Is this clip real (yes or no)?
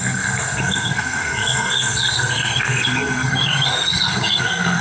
no